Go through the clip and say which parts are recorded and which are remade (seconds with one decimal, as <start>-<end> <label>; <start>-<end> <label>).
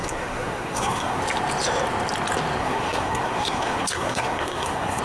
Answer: 0.0-1.2 remade; 1.2-2.6 recorded; 2.6-5.0 remade